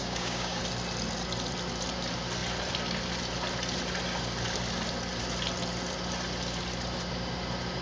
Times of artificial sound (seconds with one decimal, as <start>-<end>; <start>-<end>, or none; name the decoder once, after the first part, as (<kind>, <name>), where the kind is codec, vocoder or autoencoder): 0.0-0.6 (codec, DAC)